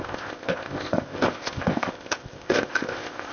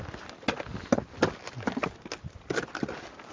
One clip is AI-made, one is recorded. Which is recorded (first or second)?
second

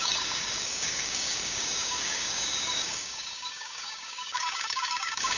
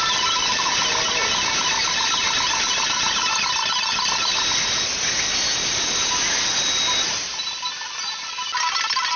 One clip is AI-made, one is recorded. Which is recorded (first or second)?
second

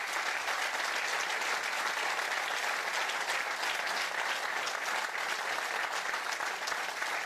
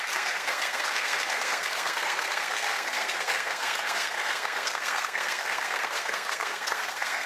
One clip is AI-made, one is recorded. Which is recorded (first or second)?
first